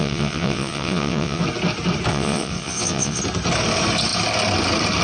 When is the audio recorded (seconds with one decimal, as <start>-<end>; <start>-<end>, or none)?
1.4-2.1; 3.2-5.0